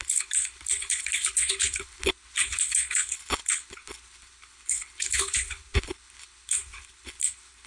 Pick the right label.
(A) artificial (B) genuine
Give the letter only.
A